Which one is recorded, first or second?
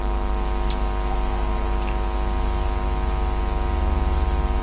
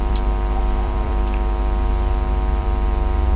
first